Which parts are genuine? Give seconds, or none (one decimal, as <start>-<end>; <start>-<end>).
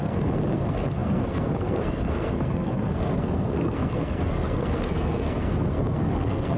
none